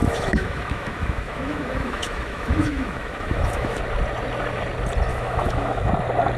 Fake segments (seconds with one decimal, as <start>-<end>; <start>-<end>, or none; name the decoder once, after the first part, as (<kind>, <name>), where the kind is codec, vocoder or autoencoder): 0.0-3.8 (autoencoder, DAC-VAE); 5.1-5.9